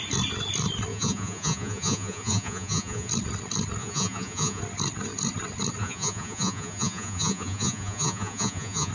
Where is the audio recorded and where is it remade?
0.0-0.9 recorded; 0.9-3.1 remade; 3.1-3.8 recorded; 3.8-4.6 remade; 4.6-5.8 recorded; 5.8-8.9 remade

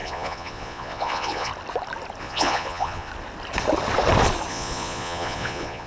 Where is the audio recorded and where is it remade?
0.0-1.5 remade; 1.5-2.2 recorded; 2.2-3.1 remade; 3.1-4.5 recorded; 4.5-5.9 remade

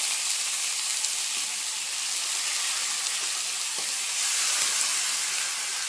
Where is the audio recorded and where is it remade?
0.0-5.9 recorded

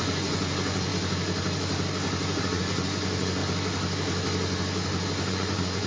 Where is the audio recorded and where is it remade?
0.0-0.9 remade; 0.9-2.4 recorded; 2.4-3.4 remade; 3.4-5.3 recorded; 5.3-5.9 remade

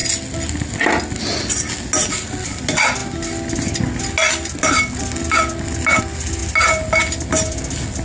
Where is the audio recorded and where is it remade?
0.0-8.0 recorded

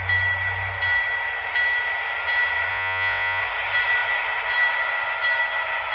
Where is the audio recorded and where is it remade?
0.0-2.7 recorded; 2.7-3.4 remade; 3.4-5.9 recorded

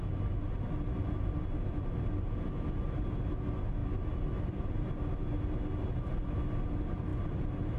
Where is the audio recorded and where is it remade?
0.0-7.8 recorded